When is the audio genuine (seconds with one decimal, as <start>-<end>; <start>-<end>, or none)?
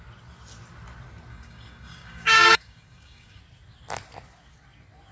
0.0-1.3; 3.4-5.1